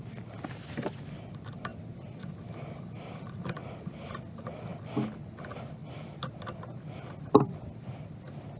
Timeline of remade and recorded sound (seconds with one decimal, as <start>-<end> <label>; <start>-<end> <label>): 0.0-8.6 recorded